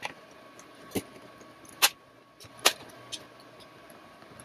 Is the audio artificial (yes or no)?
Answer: no